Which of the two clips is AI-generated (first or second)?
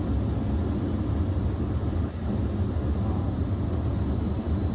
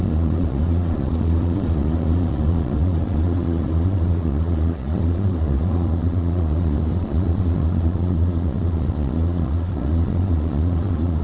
second